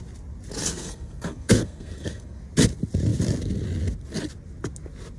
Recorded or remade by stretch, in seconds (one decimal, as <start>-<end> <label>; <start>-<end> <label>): 0.0-0.6 recorded; 0.6-2.4 remade; 2.4-5.2 recorded